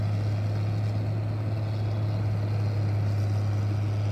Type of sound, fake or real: real